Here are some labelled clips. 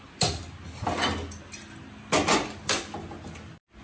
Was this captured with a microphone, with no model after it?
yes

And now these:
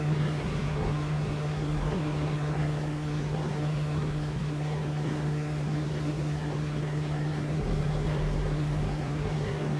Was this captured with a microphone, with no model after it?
no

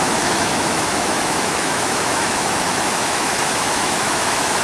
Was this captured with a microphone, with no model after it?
no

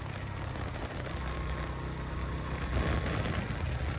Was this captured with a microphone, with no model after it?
yes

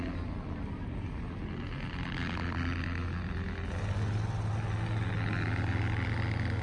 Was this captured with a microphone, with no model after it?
yes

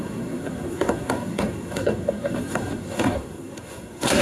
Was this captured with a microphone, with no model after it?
no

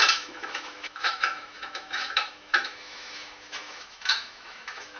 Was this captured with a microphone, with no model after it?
no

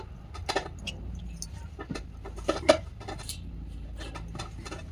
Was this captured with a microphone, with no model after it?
yes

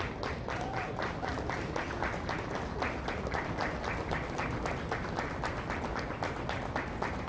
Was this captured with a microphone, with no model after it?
yes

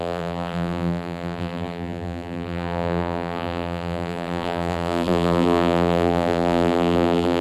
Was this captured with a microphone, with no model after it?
no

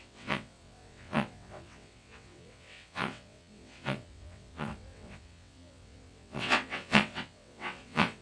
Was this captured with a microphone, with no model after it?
no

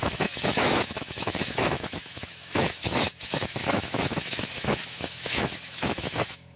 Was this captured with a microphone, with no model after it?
no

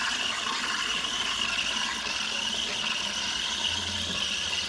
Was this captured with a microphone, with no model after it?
yes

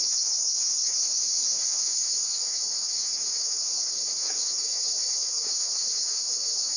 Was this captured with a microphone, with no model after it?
no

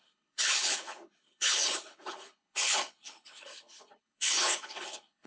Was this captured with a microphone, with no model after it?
no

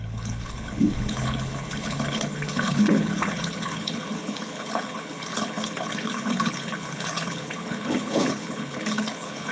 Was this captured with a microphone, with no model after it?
no